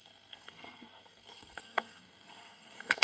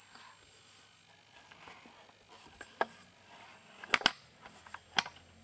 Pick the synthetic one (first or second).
first